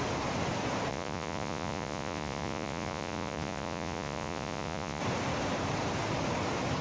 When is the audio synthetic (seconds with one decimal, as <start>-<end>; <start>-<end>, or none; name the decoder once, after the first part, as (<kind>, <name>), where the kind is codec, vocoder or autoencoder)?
0.9-5.0 (vocoder, Vocos)